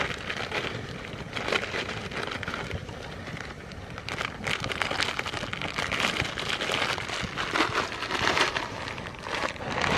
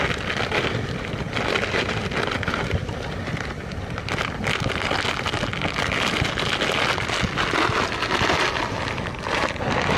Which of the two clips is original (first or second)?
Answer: second